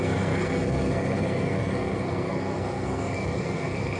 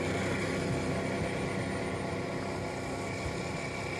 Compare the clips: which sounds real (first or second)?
second